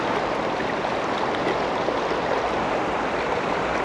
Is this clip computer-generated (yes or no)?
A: no